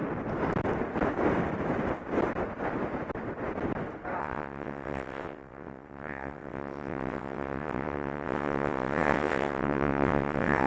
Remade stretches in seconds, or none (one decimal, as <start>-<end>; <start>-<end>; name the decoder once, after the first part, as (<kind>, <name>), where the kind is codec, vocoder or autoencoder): 4.2-10.7 (vocoder, WaveNeXt)